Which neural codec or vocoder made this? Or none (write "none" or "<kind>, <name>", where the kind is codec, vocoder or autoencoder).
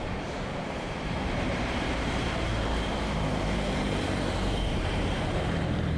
vocoder, BigVGAN v2